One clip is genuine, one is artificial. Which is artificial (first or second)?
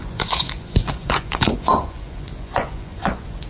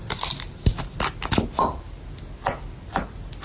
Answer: first